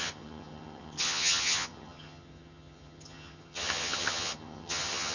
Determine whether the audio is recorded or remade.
remade